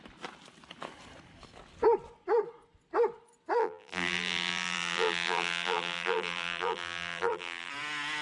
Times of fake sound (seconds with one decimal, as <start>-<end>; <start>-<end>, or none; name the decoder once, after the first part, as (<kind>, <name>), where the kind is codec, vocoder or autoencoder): 3.6-7.7 (vocoder, BigVGAN v2)